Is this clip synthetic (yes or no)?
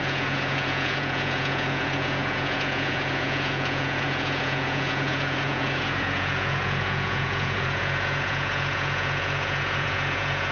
yes